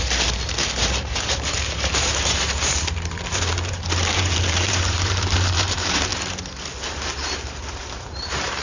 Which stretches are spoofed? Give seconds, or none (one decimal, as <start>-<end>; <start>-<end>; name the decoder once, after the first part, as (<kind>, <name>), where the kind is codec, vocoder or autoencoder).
0.0-6.1 (vocoder, BigVGAN v2); 6.8-8.6